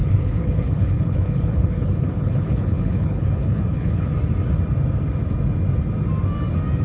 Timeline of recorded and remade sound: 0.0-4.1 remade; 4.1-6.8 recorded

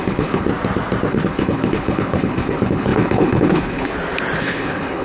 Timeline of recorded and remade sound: 0.0-0.5 remade; 0.5-1.1 recorded; 1.1-3.9 remade; 3.9-4.4 recorded; 4.4-5.0 remade

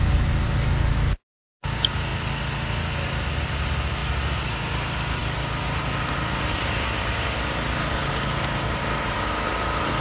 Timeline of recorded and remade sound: 0.0-7.8 recorded; 7.8-8.3 remade; 8.3-10.0 recorded

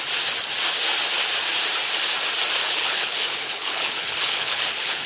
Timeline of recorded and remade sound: 0.0-2.6 recorded; 2.6-5.1 remade